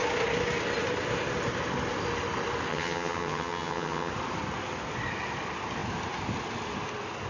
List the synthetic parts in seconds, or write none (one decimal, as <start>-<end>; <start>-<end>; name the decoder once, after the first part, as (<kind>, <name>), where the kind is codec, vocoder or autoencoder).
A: 2.7-4.1 (vocoder, HiFi-GAN)